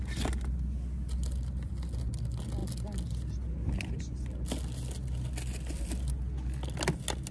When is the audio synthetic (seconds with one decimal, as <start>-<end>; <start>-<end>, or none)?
none